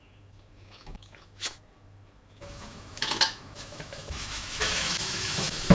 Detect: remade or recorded remade